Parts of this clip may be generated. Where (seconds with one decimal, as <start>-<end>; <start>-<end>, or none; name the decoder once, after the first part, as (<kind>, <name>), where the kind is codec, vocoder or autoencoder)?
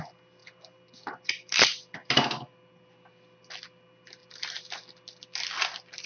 none